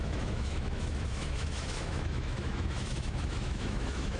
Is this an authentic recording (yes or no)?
no